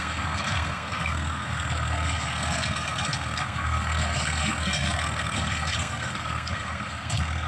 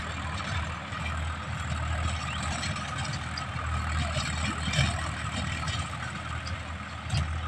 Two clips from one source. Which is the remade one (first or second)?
first